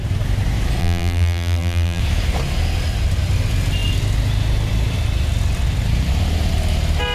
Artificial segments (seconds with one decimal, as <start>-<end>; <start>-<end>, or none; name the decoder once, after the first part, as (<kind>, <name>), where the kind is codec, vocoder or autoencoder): 0.8-2.0 (vocoder, BigVGAN v2)